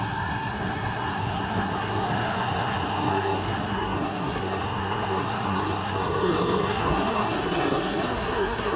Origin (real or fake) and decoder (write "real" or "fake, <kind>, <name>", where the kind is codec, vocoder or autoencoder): fake, codec, SNAC